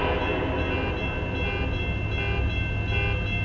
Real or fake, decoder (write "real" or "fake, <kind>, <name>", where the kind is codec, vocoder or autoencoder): real